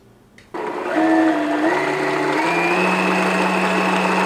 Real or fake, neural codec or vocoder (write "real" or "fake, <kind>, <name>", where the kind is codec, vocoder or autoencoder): real